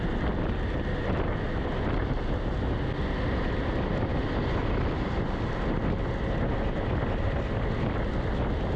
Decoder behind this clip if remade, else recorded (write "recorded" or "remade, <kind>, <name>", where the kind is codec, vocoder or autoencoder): recorded